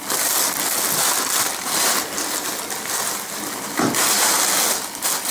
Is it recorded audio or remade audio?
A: recorded